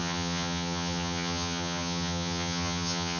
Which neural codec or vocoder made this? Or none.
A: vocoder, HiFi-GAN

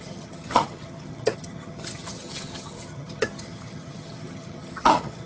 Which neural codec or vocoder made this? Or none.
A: vocoder, HiFi-GAN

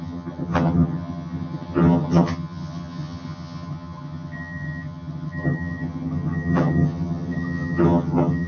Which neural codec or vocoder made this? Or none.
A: vocoder, HiFi-GAN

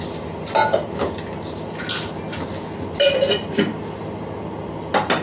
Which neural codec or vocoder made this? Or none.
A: none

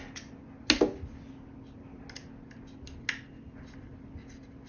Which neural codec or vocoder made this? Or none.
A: none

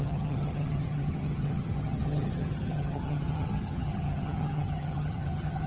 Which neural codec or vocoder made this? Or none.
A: vocoder, HiFi-GAN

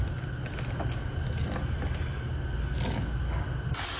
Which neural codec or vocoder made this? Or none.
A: none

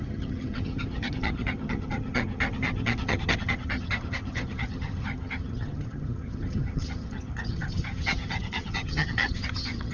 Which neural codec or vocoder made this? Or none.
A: vocoder, HiFi-GAN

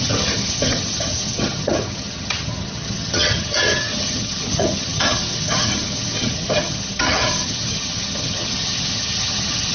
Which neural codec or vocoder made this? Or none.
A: vocoder, HiFi-GAN